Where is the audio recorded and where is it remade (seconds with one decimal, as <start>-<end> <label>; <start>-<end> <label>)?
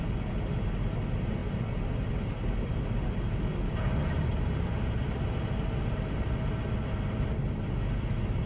0.0-8.5 recorded